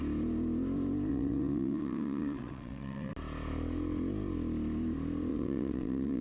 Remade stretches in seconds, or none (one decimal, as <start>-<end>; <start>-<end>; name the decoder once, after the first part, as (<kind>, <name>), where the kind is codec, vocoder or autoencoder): 1.1-3.1 (vocoder, WaveNeXt); 5.3-6.2